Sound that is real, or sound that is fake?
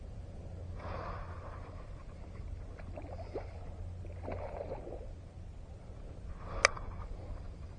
real